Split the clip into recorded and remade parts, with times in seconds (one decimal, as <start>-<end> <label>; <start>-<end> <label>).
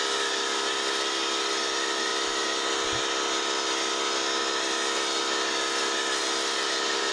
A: 0.0-7.1 recorded